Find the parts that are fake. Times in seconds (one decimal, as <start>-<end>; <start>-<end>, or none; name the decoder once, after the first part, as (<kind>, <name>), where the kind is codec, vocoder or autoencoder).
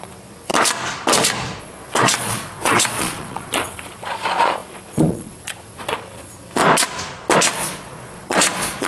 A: 0.0-0.5 (vocoder, Vocos); 1.6-6.6; 7.4-8.9